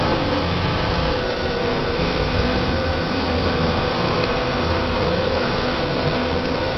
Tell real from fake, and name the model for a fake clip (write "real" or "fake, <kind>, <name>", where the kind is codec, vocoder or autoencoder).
fake, codec, SNAC